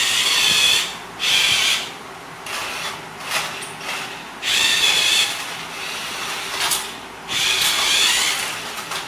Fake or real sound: real